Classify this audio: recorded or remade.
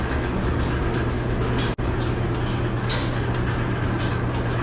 recorded